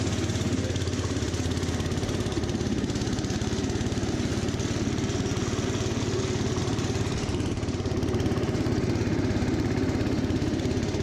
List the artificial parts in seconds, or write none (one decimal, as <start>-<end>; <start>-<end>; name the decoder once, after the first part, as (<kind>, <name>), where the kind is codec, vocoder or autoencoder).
0.0-4.3 (vocoder, BigVGAN v2); 6.6-11.0